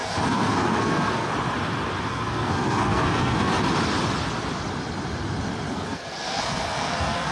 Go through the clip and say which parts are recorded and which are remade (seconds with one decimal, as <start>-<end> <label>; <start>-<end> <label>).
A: 0.0-1.3 remade; 1.3-2.1 recorded; 2.1-3.5 remade; 3.5-5.7 recorded; 5.7-7.3 remade